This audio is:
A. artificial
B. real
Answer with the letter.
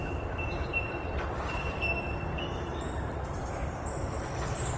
A